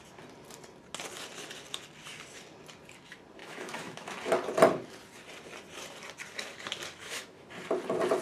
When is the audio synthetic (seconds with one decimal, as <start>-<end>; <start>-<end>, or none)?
3.4-4.1; 7.0-7.5